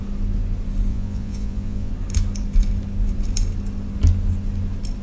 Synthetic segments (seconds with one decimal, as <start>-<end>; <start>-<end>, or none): 0.9-1.9